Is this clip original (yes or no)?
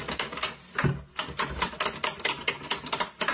yes